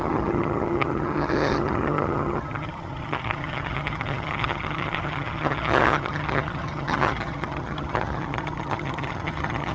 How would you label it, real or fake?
fake